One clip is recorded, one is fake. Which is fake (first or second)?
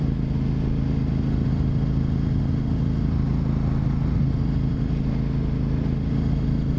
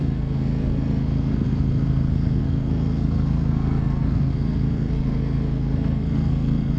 second